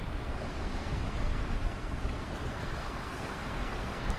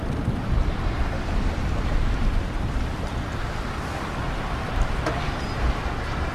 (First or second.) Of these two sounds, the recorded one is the second